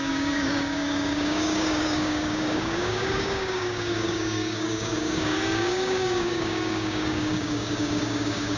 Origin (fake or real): fake